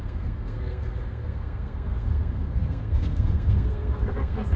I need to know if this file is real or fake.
fake